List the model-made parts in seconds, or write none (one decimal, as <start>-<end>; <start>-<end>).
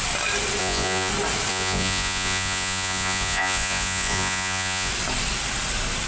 0.6-1.1; 1.5-4.9